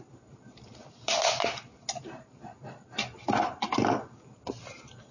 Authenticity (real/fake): real